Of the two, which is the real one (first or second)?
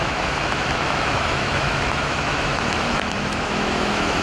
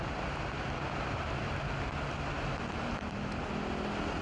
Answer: second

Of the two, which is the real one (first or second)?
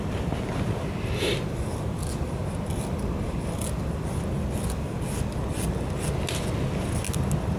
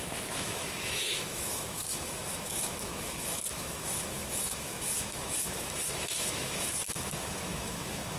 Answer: first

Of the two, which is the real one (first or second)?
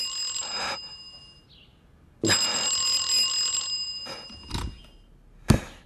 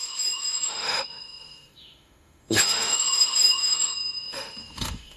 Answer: first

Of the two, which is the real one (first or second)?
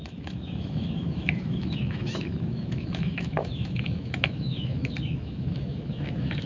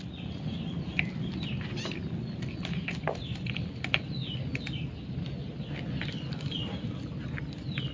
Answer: second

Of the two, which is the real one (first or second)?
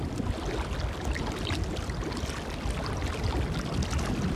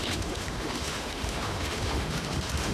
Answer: first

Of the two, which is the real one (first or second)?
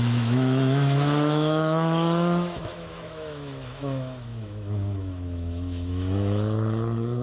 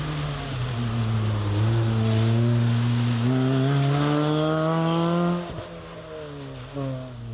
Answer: second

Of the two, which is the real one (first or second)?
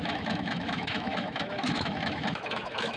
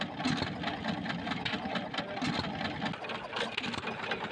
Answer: second